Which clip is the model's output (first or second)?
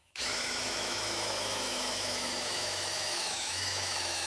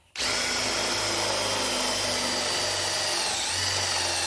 first